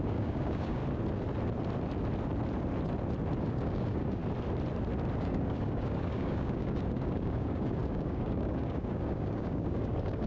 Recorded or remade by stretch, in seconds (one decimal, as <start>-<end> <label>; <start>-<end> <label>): 0.0-0.8 remade; 0.8-3.4 recorded; 3.4-4.2 remade; 4.2-5.2 recorded; 5.2-10.3 remade